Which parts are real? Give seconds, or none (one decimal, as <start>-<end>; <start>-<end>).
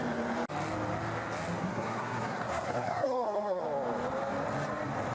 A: 0.0-1.6; 3.6-5.1